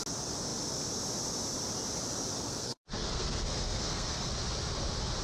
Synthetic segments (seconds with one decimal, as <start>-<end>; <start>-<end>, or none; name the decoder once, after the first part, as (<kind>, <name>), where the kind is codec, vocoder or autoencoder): 2.4-4.3 (codec, SNAC)